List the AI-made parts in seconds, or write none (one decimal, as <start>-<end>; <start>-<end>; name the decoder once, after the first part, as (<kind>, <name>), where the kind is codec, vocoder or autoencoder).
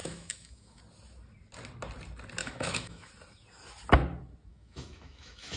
0.0-0.8 (autoencoder, DAC-VAE); 2.4-3.1; 4.5-5.6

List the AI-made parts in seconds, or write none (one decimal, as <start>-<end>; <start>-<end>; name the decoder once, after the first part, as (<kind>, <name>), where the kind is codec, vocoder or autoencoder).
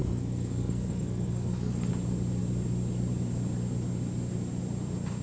0.0-1.9 (codec, SNAC)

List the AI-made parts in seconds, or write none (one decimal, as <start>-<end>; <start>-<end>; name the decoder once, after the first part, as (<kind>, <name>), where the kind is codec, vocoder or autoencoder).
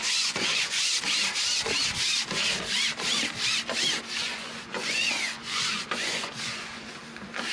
0.0-1.0 (vocoder, Vocos); 4.2-7.0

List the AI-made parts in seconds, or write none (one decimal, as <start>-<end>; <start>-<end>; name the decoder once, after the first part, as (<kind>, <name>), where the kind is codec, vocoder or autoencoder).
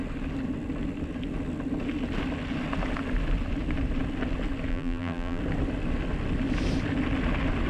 4.7-5.4 (vocoder, BigVGAN v2)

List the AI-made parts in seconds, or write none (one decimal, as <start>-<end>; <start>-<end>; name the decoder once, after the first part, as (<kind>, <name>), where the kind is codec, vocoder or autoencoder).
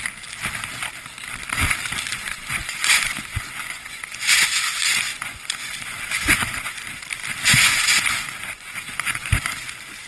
2.1-4.4 (vocoder, Vocos); 5.1-7.0; 7.5-9.3